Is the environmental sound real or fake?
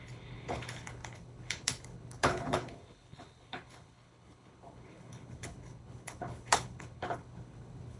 fake